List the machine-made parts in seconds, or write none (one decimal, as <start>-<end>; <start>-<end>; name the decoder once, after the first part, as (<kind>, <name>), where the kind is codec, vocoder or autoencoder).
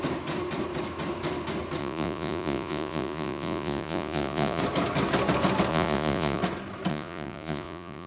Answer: 1.8-4.6 (vocoder, Vocos); 5.7-6.4; 6.9-8.1